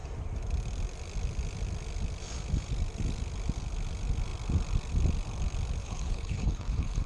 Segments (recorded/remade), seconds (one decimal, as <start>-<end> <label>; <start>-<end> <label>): 0.0-5.8 recorded; 5.8-7.1 remade